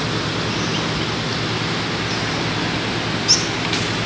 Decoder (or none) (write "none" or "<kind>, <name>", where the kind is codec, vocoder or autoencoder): none